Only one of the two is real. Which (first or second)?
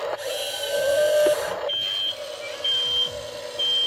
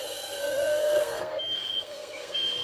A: first